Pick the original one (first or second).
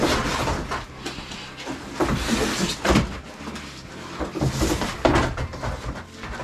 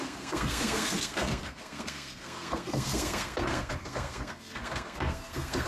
first